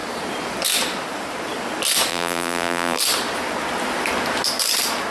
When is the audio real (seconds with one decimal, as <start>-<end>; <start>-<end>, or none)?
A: 0.0-2.1; 3.0-5.1

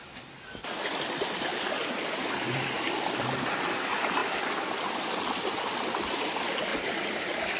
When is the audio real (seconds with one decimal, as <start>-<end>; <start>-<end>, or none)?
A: 4.2-5.0; 6.7-7.6

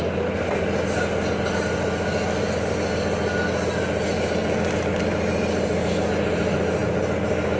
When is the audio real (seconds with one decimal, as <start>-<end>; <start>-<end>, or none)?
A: 0.0-7.6

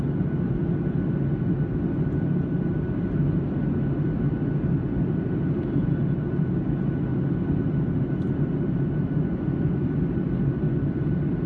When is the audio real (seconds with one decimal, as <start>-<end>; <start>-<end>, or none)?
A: 0.0-7.1; 11.0-11.5

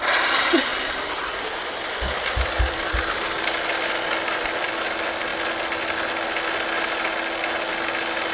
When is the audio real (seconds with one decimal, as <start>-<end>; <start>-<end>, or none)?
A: 5.3-8.3

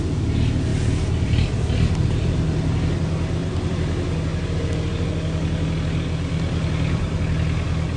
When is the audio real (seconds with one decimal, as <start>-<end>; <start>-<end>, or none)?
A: 0.0-0.7; 3.0-3.4; 4.0-8.0

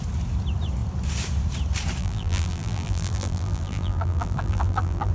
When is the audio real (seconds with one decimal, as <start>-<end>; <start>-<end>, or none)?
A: 0.0-2.0